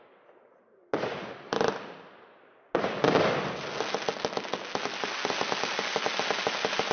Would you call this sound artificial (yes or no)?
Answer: no